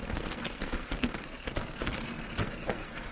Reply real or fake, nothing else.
fake